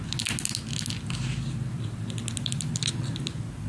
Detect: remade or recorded recorded